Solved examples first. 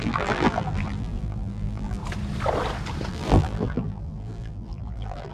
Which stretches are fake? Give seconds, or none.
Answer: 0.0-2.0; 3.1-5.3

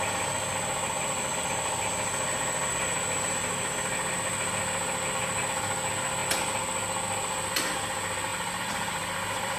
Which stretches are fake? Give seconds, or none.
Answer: 8.3-9.6

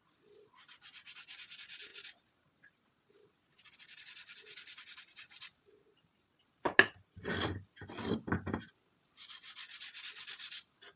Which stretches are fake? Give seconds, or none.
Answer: none

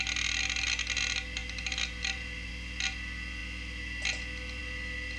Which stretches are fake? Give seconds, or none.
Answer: 1.4-2.5